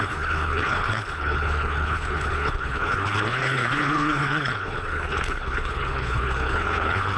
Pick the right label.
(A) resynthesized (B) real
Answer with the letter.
A